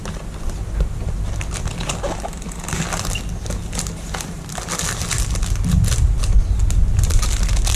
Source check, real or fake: real